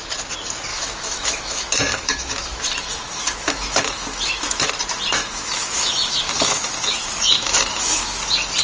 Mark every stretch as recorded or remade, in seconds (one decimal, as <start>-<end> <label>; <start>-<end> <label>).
0.0-0.7 recorded; 0.7-4.7 remade; 4.7-5.2 recorded; 5.2-8.2 remade; 8.2-8.6 recorded